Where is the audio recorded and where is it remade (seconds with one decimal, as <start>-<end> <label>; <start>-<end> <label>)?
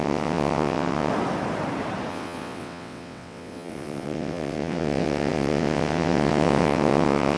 0.0-1.1 remade; 1.1-2.1 recorded; 2.1-7.4 remade